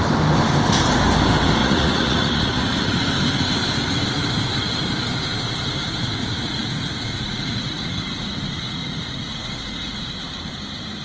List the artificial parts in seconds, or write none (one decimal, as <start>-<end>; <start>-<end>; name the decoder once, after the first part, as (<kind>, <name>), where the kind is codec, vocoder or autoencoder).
1.6-3.0 (vocoder, Vocos); 6.2-10.1